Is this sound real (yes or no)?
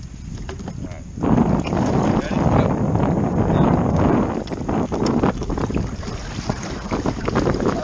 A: yes